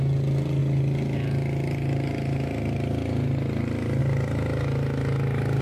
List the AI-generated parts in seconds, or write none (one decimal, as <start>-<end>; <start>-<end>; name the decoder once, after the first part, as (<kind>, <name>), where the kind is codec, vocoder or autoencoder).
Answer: none